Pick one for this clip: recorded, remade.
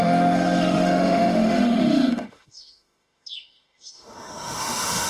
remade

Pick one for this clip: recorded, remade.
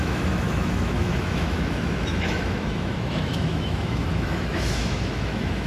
remade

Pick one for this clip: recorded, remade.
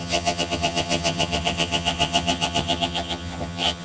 remade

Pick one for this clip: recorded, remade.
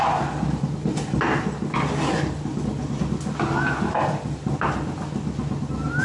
recorded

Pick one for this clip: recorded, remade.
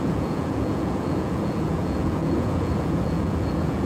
remade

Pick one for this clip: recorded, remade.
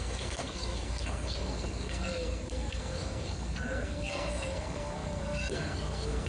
remade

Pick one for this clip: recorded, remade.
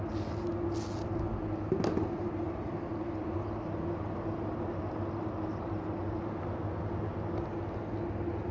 recorded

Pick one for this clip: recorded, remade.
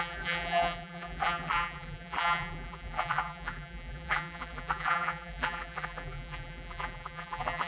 remade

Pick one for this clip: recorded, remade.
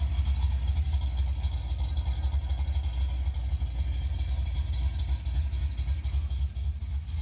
recorded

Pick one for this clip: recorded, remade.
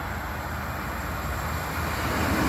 recorded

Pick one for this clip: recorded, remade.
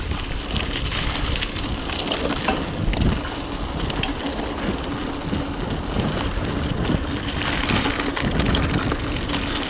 recorded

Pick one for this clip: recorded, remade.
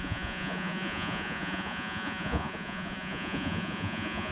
remade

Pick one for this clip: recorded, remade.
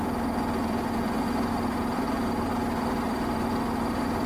remade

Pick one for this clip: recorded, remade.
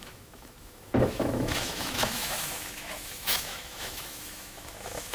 remade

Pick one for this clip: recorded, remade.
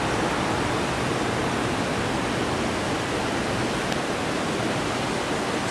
recorded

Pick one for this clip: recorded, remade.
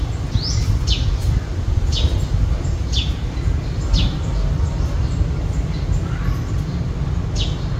recorded